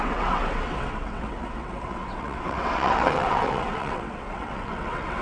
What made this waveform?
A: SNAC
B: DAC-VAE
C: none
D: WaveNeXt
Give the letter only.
D